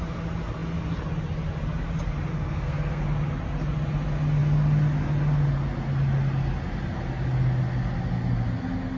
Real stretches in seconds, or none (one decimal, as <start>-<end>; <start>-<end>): 0.0-2.3; 3.0-9.0